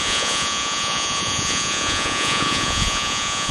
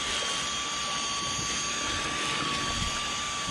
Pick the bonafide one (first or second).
second